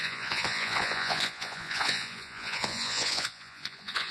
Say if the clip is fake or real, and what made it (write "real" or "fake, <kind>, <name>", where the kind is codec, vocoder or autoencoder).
fake, vocoder, Vocos